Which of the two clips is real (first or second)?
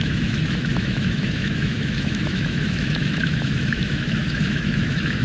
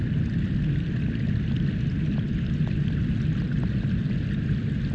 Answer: second